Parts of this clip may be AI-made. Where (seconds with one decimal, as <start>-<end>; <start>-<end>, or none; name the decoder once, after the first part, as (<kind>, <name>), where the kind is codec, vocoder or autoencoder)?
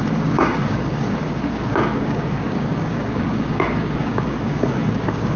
0.0-5.4 (codec, DAC)